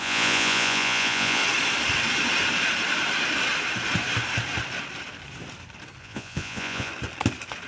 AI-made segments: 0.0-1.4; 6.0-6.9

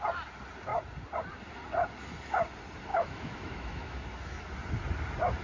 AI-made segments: 2.9-4.4